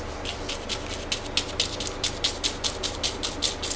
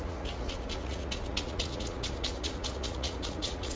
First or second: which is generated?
second